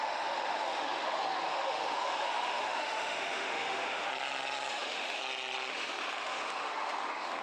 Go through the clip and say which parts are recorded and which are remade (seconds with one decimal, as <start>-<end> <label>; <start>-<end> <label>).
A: 0.0-4.1 remade; 4.1-4.7 recorded; 4.7-5.2 remade; 5.2-5.7 recorded; 5.7-7.4 remade